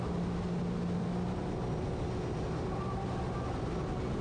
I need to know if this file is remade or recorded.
recorded